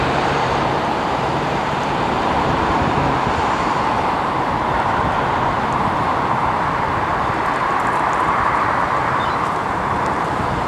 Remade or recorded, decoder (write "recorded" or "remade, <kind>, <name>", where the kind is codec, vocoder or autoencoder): remade, vocoder, BigVGAN v2